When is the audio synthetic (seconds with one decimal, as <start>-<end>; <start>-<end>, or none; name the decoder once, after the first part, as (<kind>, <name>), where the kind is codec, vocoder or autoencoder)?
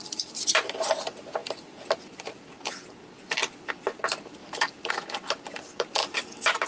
6.0-6.7 (codec, DAC)